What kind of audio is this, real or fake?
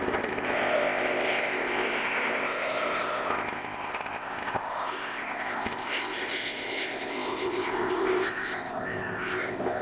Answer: fake